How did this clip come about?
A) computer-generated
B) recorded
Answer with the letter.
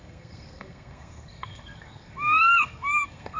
A